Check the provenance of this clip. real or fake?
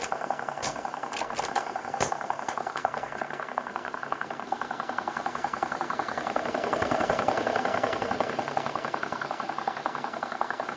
fake